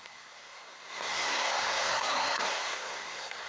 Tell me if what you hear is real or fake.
fake